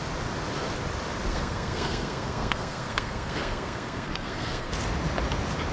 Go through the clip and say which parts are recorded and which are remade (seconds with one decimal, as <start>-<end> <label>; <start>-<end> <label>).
0.0-1.3 recorded; 1.3-4.7 remade; 4.7-5.7 recorded

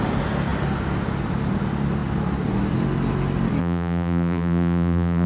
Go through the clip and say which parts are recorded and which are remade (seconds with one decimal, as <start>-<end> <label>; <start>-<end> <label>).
0.0-3.6 recorded; 3.6-5.3 remade